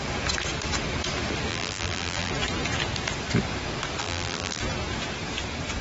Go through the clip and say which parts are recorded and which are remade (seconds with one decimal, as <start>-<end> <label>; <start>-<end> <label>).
0.0-1.5 recorded; 1.5-2.3 remade; 2.3-4.0 recorded; 4.0-4.6 remade; 4.6-5.8 recorded